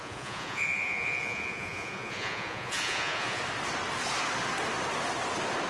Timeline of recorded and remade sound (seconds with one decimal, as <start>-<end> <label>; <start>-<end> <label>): 0.0-3.4 remade; 3.4-5.7 recorded